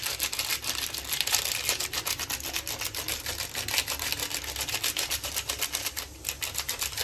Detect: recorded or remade recorded